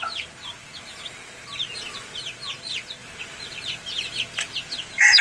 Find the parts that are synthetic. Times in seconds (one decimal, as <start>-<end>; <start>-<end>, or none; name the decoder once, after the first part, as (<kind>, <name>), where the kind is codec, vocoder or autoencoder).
none